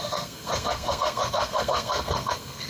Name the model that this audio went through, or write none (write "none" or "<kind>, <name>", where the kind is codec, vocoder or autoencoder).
codec, SNAC